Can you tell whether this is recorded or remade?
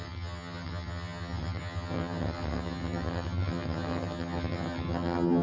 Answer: remade